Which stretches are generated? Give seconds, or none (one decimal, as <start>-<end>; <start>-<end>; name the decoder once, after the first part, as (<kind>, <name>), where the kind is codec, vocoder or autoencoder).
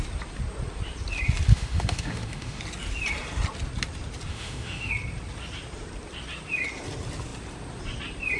1.5-2.6 (autoencoder, DAC-VAE); 4.3-4.9